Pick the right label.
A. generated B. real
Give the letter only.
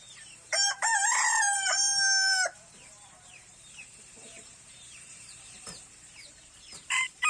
A